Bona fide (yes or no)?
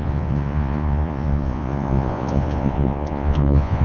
no